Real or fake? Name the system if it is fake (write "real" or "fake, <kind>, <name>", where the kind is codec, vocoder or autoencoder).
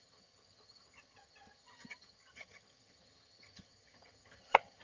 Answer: fake, vocoder, HiFi-GAN